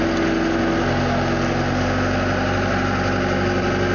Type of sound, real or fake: real